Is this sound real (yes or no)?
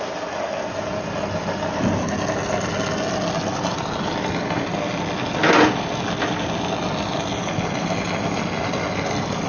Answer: yes